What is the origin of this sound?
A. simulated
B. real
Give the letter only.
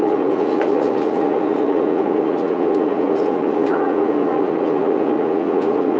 A